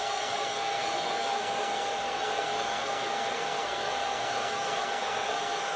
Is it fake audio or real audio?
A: fake